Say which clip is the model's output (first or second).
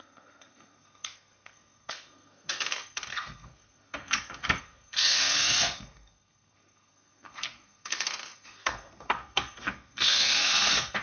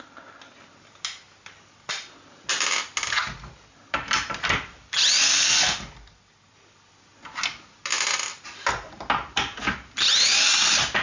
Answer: first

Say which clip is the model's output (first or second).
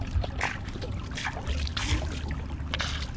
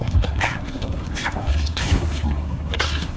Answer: second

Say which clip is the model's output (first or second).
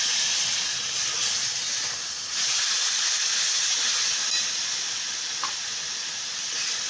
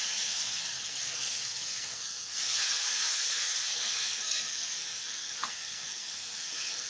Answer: second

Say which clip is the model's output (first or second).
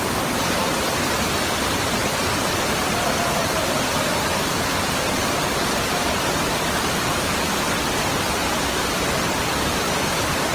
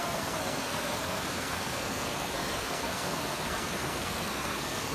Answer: second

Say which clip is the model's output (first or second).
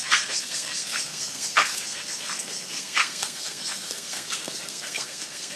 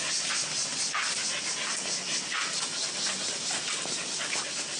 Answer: first